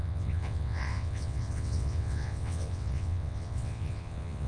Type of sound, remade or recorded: remade